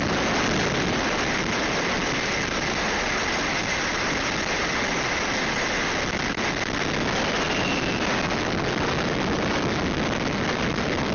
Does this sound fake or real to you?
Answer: real